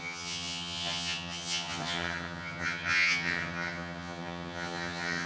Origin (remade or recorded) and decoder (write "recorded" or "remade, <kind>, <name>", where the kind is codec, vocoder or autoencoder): remade, vocoder, HiFi-GAN